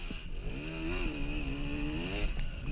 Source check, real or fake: real